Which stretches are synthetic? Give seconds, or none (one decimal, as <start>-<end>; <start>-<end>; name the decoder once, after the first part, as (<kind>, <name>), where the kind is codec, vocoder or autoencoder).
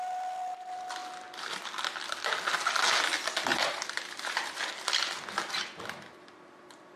3.5-4.7 (vocoder, BigVGAN v2)